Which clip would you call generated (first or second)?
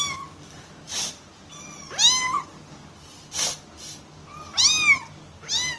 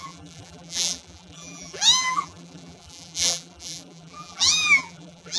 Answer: second